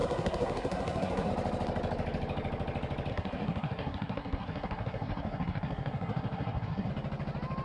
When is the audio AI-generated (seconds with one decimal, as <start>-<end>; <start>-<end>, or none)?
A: 0.0-1.3; 3.1-6.9